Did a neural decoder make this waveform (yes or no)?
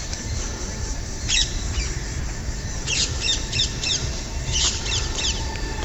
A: yes